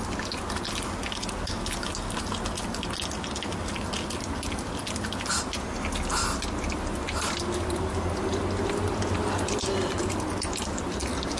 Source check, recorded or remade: recorded